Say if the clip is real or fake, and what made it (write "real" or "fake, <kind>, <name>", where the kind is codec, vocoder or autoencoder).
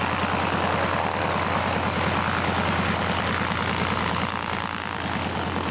real